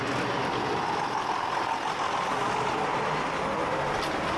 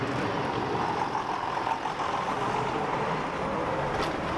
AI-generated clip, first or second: second